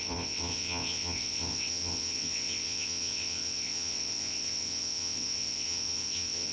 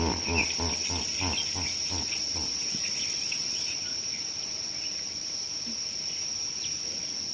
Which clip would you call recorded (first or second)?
second